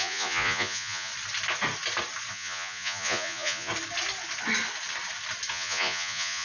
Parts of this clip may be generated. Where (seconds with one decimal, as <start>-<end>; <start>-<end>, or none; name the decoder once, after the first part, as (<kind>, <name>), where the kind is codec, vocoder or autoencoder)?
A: 0.0-1.1 (vocoder, Vocos); 2.3-3.7; 5.5-6.4